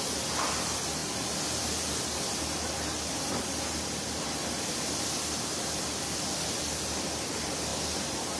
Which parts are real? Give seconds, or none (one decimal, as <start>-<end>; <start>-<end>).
0.0-8.4